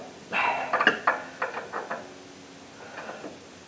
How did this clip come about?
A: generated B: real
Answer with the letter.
B